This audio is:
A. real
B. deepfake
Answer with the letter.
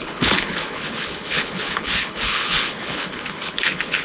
B